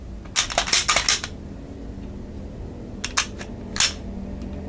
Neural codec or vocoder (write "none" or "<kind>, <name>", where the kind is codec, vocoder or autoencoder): none